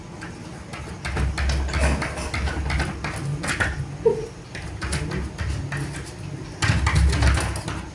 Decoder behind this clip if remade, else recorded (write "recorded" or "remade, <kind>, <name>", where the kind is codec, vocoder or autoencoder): recorded